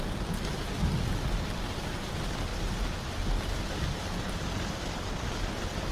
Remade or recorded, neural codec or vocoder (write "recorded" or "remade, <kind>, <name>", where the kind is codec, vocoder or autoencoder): recorded